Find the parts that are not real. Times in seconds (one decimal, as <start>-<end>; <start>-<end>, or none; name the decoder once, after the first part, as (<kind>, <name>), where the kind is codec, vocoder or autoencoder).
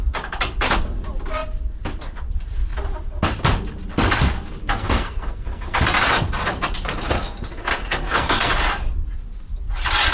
4.6-5.8 (codec, SNAC); 7.5-8.5